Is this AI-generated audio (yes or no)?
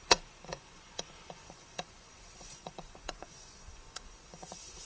yes